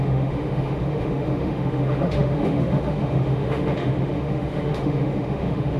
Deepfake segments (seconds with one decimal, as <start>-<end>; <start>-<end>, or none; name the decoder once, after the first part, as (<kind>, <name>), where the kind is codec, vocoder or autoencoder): 0.0-5.8 (autoencoder, DAC-VAE)

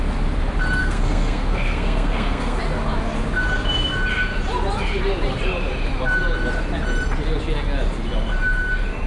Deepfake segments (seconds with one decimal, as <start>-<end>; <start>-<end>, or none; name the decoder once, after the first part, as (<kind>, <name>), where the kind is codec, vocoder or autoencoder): 0.8-2.6 (codec, SNAC)

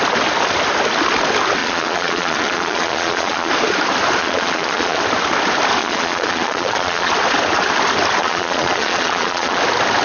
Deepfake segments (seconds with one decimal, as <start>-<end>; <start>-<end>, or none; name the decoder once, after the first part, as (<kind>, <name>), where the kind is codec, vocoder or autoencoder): 1.6-3.5 (vocoder, Vocos); 4.2-5.0; 5.8-7.1; 8.2-9.6

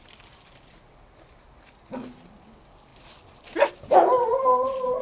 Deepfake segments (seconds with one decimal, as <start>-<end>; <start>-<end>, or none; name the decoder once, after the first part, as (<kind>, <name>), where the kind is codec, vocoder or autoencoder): none

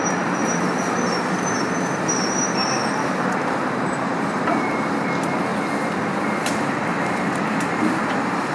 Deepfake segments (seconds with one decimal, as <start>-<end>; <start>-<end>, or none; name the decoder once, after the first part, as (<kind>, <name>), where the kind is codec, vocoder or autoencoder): 0.0-5.5 (vocoder, BigVGAN v2); 6.4-8.5

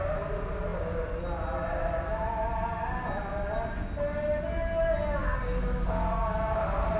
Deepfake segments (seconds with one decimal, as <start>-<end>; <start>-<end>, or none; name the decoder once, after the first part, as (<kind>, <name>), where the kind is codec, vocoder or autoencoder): 5.2-6.6 (codec, DAC)

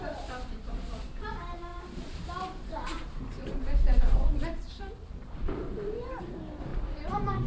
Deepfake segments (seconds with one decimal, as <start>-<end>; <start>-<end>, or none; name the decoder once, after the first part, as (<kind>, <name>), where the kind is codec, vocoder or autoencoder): 1.7-6.2 (vocoder, BigVGAN v2); 6.7-7.5

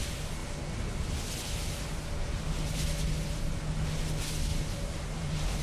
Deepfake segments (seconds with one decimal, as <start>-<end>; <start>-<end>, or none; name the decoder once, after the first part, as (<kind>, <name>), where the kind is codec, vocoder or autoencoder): 4.5-5.6 (vocoder, BigVGAN v2)